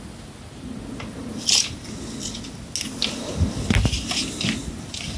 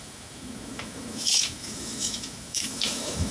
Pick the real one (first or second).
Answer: first